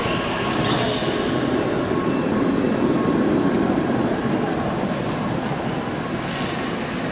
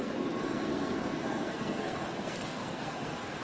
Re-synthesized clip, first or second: second